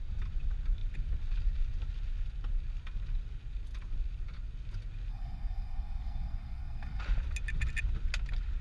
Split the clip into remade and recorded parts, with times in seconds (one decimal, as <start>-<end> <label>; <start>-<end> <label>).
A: 0.0-5.1 recorded; 5.1-7.0 remade; 7.0-8.6 recorded